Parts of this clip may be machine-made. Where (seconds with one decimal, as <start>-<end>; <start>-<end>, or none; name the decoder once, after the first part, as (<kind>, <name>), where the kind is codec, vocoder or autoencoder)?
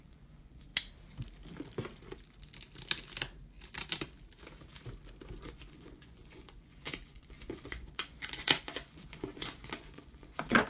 0.0-0.7 (vocoder, Vocos); 5.4-10.7